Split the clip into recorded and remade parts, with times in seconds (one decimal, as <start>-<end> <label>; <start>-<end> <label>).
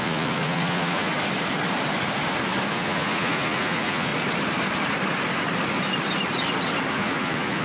0.0-1.1 remade; 1.1-2.7 recorded; 2.7-4.1 remade; 4.1-6.9 recorded; 6.9-7.6 remade